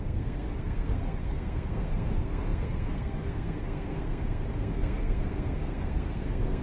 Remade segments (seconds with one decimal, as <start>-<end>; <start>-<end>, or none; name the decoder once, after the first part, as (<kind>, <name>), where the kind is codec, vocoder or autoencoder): 0.0-6.6 (codec, SNAC)